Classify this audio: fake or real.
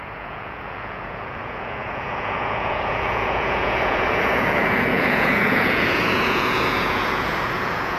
fake